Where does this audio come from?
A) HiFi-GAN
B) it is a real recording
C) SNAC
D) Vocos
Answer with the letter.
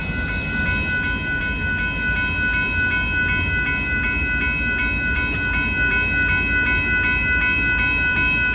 B